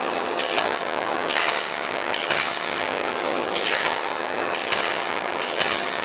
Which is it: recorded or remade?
remade